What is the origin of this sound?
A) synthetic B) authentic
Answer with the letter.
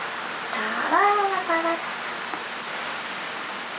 B